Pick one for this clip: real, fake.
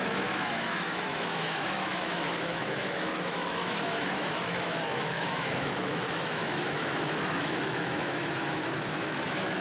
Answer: fake